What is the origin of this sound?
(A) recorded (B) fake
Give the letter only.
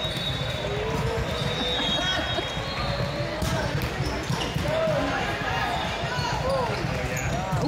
A